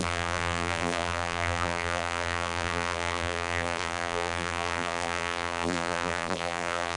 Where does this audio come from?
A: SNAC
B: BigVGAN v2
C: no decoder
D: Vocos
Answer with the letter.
B